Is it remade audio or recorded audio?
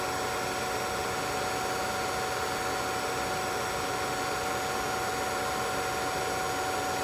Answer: recorded